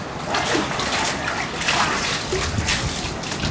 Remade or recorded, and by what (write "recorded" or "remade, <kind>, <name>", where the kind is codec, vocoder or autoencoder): recorded